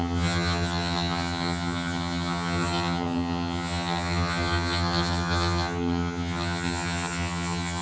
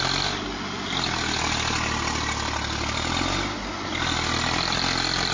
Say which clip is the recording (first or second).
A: second